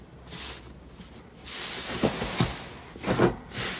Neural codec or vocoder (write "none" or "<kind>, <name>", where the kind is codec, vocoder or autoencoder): none